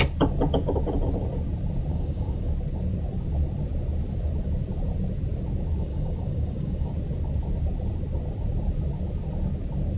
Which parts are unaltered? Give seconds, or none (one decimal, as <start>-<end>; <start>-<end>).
0.0-1.9; 2.5-5.8; 6.9-10.0